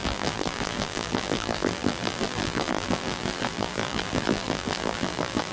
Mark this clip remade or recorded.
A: remade